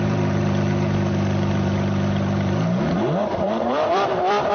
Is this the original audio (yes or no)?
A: no